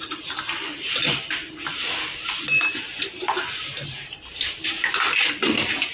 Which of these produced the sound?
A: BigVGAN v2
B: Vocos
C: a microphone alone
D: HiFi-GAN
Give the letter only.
C